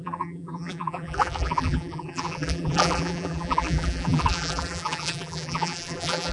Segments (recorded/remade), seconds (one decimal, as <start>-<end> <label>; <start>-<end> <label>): 0.0-6.3 remade